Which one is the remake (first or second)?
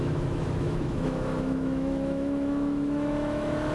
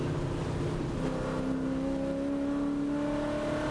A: first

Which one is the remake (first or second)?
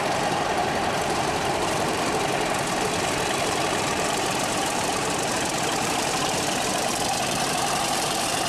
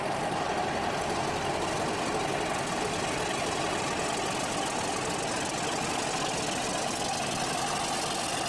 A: first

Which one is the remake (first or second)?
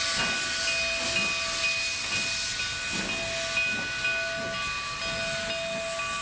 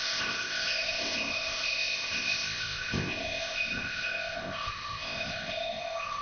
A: second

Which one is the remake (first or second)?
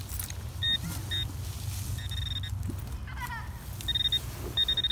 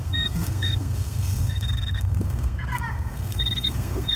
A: second